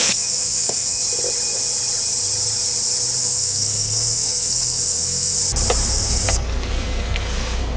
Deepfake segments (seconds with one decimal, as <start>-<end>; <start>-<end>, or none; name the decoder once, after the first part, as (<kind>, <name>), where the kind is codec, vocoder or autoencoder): 0.0-1.0 (codec, SNAC); 3.2-5.4; 5.9-7.8